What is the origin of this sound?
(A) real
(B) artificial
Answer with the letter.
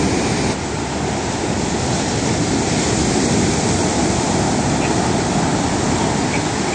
A